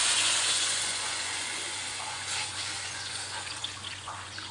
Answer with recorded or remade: remade